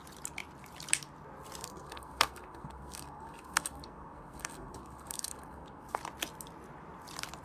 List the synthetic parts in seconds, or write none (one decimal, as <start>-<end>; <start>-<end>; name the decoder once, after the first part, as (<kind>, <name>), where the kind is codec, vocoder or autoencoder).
1.6-6.0 (codec, SNAC)